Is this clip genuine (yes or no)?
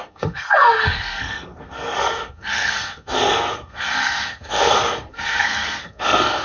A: no